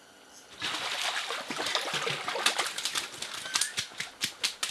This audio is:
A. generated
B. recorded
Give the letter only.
B